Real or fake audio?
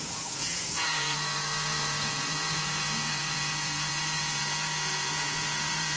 fake